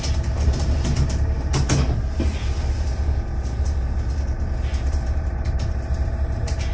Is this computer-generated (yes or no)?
no